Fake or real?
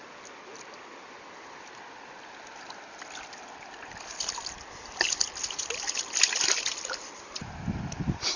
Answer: real